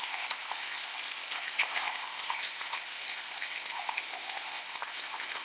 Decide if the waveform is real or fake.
fake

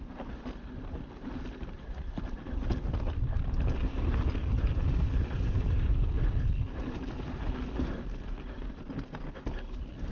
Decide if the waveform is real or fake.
real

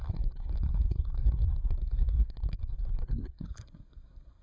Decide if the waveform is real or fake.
fake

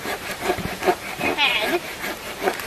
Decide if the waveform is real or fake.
fake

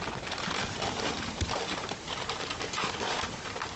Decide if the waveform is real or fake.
fake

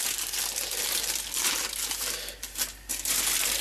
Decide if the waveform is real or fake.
real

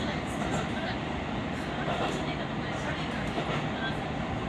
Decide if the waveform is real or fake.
real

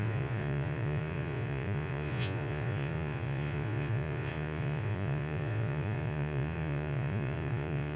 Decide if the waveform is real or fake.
fake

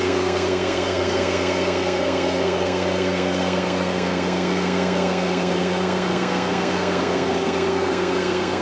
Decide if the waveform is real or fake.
fake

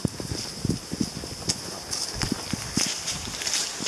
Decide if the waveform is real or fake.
real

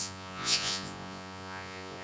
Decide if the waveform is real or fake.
fake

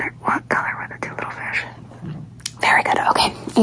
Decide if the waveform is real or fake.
real